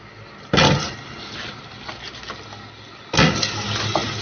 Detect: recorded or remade recorded